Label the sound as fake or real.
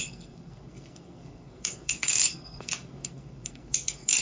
fake